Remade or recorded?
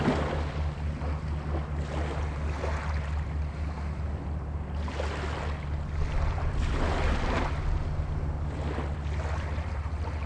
recorded